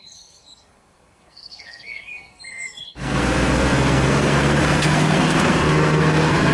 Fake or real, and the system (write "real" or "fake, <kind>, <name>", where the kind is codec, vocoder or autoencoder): fake, codec, SNAC